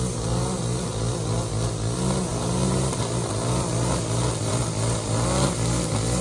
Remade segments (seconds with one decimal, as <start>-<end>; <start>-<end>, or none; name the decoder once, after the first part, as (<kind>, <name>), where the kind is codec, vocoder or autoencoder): 4.5-5.1 (vocoder, BigVGAN v2)